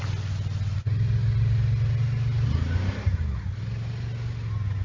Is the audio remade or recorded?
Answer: recorded